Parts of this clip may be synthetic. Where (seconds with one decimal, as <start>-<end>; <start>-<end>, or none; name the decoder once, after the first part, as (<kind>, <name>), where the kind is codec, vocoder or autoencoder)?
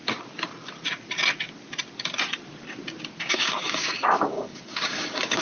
3.2-5.4 (codec, DAC)